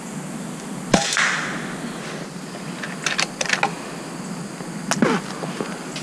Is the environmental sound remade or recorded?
recorded